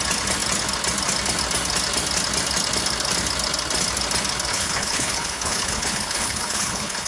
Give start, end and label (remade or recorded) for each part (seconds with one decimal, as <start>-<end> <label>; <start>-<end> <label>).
0.0-4.5 recorded; 4.5-7.1 remade